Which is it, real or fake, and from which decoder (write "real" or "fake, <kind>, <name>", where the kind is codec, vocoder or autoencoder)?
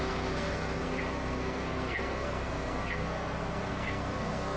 fake, codec, SNAC